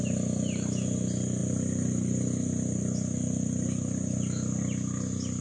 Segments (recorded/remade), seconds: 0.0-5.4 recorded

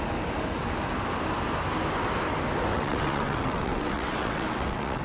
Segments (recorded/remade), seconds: 0.0-2.7 recorded; 2.7-5.0 remade

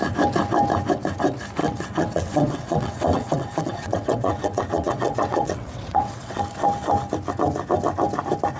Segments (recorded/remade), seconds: 0.0-1.6 recorded; 1.6-6.4 remade; 6.4-8.6 recorded

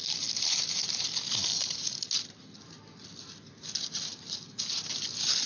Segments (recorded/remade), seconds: 0.0-5.5 recorded

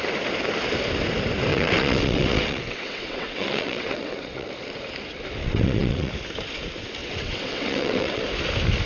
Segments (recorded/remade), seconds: 0.0-1.5 recorded; 1.5-4.5 remade; 4.5-5.4 recorded; 5.4-6.1 remade; 6.1-7.0 recorded; 7.0-8.2 remade; 8.2-8.9 recorded

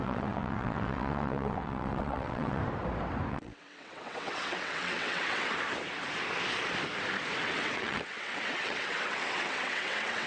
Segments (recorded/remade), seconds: 0.0-2.6 remade; 2.6-3.3 recorded; 3.3-5.5 remade; 5.5-7.4 recorded; 7.4-10.3 remade

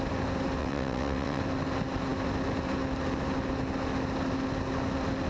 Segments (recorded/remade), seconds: 0.0-0.6 recorded; 0.6-1.4 remade; 1.4-5.3 recorded